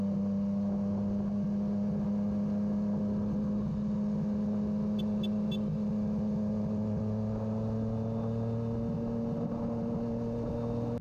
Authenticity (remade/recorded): recorded